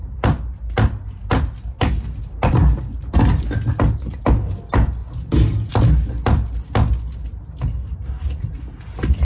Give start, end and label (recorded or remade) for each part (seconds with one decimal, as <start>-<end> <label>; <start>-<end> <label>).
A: 0.0-9.2 recorded